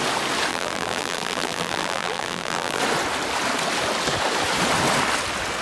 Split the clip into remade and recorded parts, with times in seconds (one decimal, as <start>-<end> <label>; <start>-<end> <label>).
0.0-0.5 recorded; 0.5-2.8 remade; 2.8-5.6 recorded